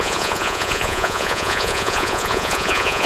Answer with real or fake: fake